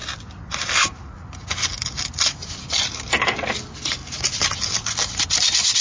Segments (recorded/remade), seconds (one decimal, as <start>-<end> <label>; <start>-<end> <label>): 0.0-5.8 recorded